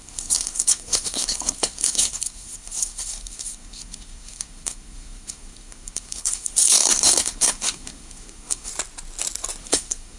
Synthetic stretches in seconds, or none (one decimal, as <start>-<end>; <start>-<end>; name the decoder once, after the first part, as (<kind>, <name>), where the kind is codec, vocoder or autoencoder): 0.0-8.7 (codec, SNAC); 9.6-10.2